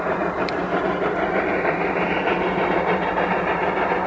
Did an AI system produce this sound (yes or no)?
no